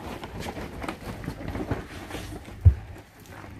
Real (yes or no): yes